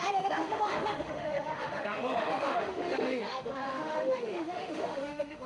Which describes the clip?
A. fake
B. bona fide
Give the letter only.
A